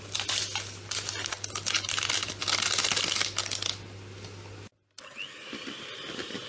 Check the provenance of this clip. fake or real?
real